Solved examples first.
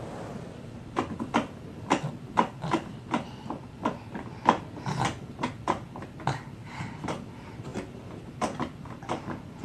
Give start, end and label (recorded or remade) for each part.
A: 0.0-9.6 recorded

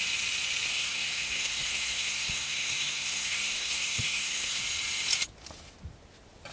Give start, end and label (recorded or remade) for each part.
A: 0.0-0.7 recorded; 0.7-4.6 remade; 4.6-6.5 recorded

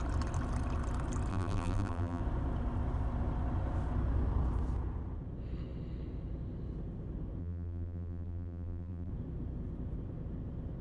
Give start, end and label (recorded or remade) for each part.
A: 0.0-1.3 recorded; 1.3-2.2 remade; 2.2-7.4 recorded; 7.4-9.1 remade; 9.1-10.8 recorded

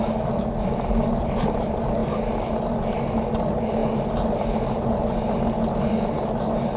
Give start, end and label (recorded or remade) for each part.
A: 0.0-6.8 recorded